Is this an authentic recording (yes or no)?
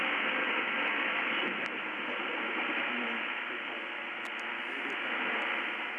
yes